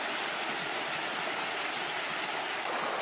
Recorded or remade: recorded